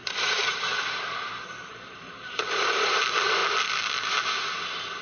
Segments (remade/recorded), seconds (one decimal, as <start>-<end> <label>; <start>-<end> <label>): 0.0-3.0 remade; 3.0-5.0 recorded